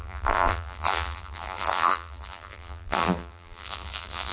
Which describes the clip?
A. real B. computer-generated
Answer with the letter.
B